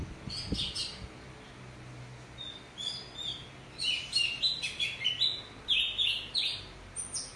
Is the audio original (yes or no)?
yes